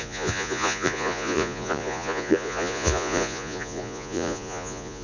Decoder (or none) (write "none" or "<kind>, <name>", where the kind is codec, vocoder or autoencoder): vocoder, Vocos